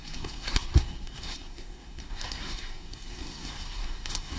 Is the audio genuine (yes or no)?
no